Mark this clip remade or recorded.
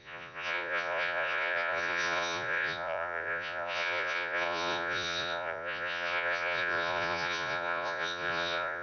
remade